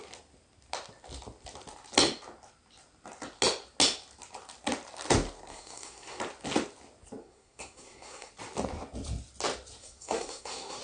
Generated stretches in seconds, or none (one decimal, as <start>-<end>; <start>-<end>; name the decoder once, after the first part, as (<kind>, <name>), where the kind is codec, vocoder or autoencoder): 5.5-6.2 (codec, SNAC); 7.2-8.3; 9.8-10.8